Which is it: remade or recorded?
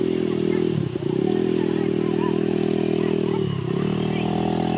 recorded